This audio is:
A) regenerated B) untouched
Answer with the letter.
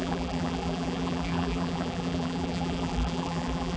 A